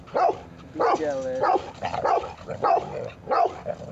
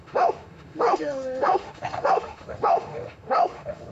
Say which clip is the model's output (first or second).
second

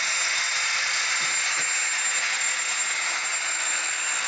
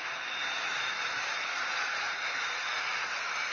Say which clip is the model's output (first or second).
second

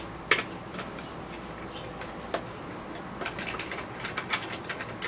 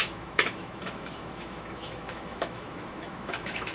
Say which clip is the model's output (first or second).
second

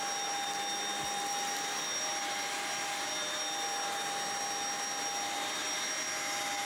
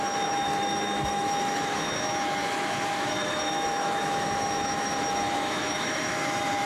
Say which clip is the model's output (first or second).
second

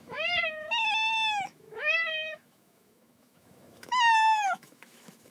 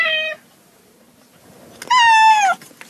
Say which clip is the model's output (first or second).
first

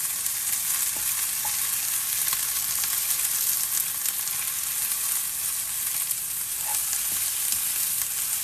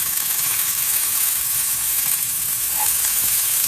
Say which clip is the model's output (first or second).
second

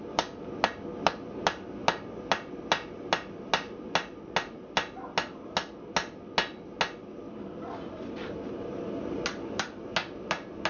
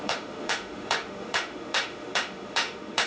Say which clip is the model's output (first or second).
second